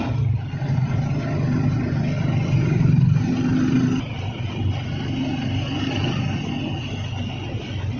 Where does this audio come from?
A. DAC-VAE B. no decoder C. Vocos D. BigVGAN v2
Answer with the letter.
B